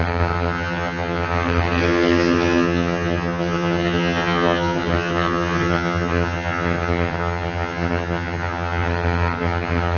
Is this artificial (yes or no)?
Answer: yes